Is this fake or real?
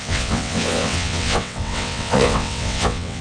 fake